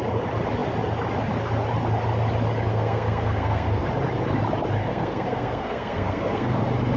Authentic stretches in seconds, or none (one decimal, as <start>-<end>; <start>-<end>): 0.0-2.7; 3.9-4.8; 6.6-7.0